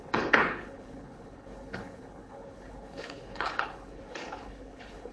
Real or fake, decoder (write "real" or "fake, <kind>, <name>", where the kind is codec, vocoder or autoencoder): fake, codec, HILCodec